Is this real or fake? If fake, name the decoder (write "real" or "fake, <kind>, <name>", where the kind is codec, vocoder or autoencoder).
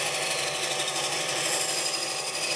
real